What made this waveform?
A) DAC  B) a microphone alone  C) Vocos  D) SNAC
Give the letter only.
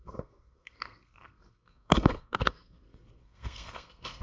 D